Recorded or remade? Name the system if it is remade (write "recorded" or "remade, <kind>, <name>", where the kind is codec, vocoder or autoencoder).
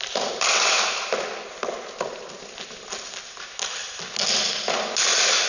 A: recorded